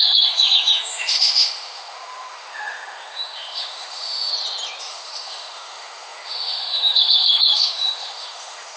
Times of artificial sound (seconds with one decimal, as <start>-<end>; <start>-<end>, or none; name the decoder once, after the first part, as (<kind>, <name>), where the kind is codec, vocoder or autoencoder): 0.0-4.3 (autoencoder, DAC-VAE); 4.8-8.8